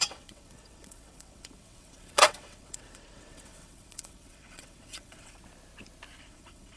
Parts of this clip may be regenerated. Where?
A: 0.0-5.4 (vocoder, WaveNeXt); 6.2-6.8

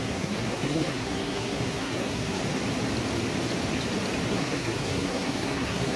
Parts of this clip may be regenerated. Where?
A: 0.0-2.4 (codec, SNAC); 4.3-6.0

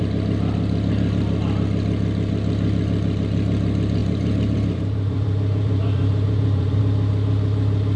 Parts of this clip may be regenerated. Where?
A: 4.0-6.8 (vocoder, BigVGAN v2)

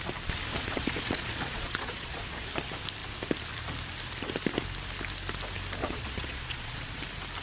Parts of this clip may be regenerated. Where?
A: 0.5-2.5 (vocoder, Vocos); 5.8-7.0